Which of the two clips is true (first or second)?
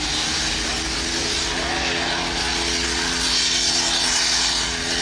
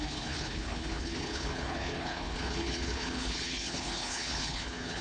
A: first